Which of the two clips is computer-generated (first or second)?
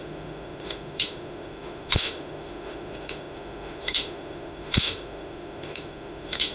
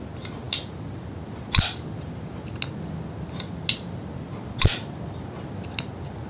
first